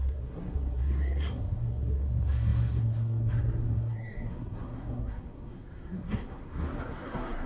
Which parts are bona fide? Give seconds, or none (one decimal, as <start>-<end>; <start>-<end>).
none